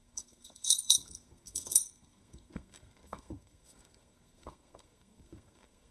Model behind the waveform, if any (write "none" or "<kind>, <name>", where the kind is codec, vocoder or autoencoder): codec, SNAC